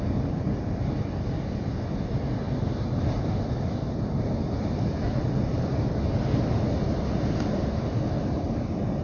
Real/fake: real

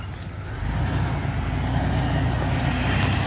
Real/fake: real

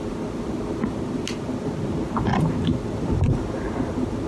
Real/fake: real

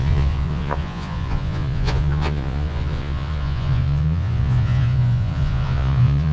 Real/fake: fake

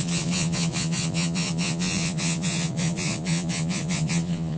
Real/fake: fake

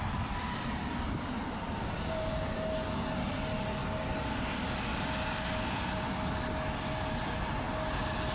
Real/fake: real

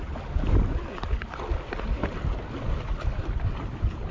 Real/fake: real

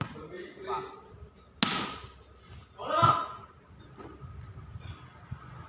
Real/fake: real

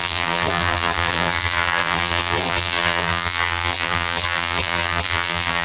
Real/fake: fake